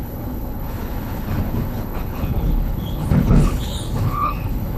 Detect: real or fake fake